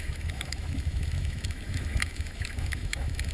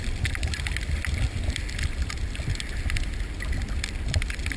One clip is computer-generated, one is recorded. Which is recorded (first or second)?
second